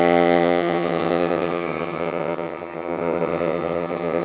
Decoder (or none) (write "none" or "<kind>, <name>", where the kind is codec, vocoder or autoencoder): vocoder, HiFi-GAN